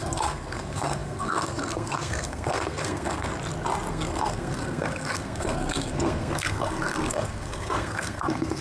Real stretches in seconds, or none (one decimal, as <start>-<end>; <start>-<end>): 3.3-3.9